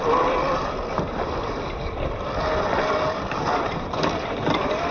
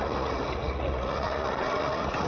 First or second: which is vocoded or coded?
second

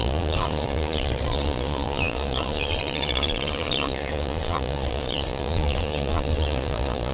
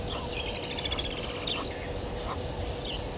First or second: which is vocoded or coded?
first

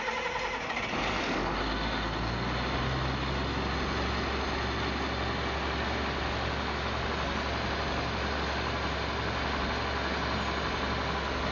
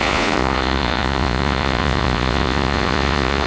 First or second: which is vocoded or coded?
second